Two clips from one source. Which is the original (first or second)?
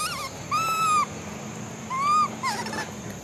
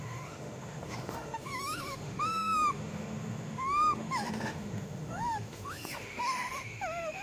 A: first